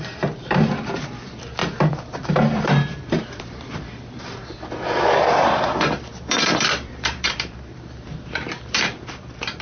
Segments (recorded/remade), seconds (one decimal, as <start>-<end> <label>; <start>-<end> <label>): 0.0-9.6 remade